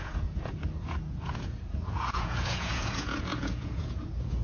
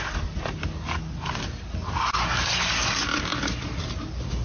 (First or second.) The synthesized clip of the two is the first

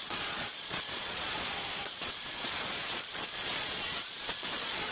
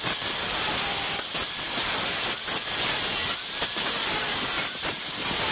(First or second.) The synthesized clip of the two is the first